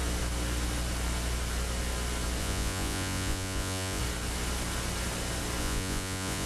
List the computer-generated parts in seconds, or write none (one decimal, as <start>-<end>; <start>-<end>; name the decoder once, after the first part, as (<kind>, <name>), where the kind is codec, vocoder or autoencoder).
2.4-4.0 (vocoder, Vocos); 5.6-6.5